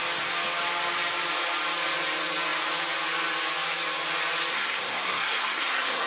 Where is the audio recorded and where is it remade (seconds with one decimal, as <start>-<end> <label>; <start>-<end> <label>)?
0.0-4.5 recorded; 4.5-6.1 remade